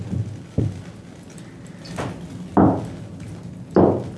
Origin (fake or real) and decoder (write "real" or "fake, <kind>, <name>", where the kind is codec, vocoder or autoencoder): real